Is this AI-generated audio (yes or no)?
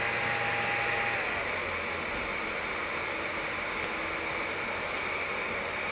no